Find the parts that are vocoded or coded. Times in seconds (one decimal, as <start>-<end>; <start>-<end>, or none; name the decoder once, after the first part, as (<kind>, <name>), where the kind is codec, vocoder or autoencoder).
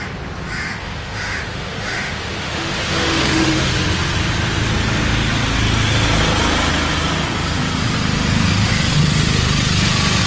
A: 0.8-3.7 (autoencoder, DAC-VAE)